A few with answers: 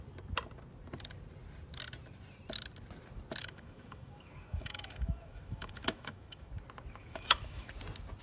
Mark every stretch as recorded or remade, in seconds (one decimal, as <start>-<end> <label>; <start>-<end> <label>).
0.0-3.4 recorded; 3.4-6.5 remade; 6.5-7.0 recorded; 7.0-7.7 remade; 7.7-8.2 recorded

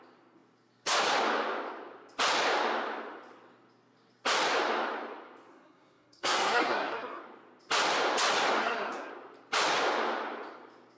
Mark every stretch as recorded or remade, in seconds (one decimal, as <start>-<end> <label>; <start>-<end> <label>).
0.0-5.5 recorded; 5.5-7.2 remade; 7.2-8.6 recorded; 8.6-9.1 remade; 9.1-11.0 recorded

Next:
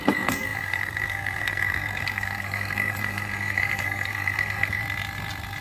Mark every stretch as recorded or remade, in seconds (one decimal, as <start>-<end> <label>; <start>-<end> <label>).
0.0-4.8 remade; 4.8-5.6 recorded

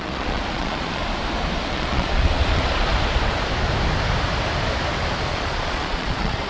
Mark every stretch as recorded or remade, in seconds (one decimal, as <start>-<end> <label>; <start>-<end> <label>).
0.0-1.0 remade; 1.0-1.7 recorded; 1.7-2.9 remade; 2.9-5.3 recorded; 5.3-6.5 remade